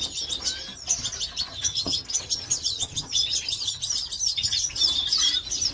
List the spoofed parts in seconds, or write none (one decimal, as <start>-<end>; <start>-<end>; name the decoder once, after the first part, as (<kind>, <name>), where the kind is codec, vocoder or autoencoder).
1.5-3.8 (vocoder, HiFi-GAN)